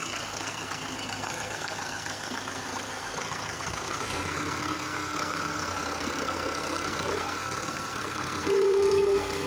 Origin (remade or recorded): remade